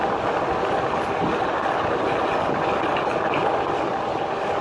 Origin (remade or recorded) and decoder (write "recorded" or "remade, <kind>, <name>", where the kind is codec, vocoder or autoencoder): recorded